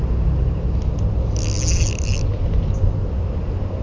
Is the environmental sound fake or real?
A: real